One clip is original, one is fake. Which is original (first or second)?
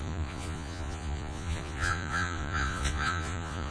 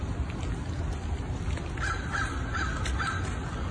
second